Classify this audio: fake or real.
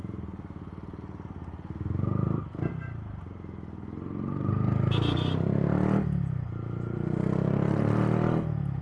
real